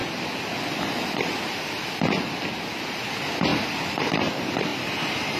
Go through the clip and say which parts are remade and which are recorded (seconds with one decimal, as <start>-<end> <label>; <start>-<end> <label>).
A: 0.0-4.7 recorded; 4.7-5.4 remade